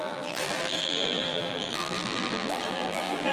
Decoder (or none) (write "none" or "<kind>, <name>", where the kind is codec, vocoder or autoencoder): vocoder, BigVGAN v2